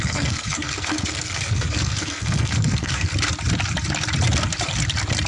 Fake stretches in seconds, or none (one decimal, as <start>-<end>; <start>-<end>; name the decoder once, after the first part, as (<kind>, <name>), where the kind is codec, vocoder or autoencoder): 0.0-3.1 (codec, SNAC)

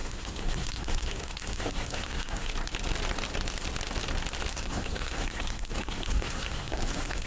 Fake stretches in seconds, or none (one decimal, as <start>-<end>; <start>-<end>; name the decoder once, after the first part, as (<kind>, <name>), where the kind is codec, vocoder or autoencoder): 0.0-2.5 (codec, SNAC); 4.5-7.3

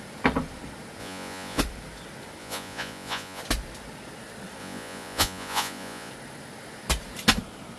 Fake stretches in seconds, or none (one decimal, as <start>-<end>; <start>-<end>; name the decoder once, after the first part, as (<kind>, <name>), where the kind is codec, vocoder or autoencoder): 1.0-1.6 (vocoder, Vocos); 2.4-3.4; 4.6-6.1

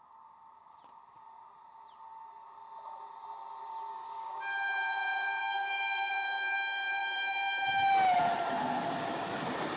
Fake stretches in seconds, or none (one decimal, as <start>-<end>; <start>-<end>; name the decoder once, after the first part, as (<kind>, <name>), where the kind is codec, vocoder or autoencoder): 3.9-4.4 (codec, DAC); 5.4-6.1

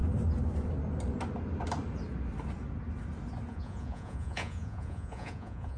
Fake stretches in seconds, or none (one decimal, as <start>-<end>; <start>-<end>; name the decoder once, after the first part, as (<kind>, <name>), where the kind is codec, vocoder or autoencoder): 3.5-5.8 (vocoder, Vocos)

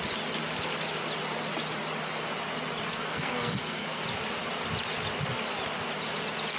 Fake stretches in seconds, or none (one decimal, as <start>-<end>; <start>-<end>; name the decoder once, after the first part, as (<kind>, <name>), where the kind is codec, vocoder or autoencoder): 2.9-4.0 (codec, SNAC)

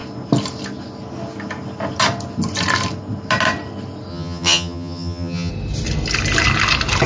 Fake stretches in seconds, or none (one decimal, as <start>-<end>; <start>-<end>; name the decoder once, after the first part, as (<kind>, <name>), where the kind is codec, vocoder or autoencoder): 4.1-5.5 (vocoder, HiFi-GAN)